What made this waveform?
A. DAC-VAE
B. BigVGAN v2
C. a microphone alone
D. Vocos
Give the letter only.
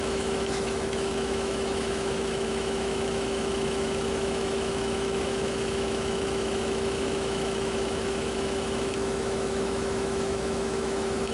A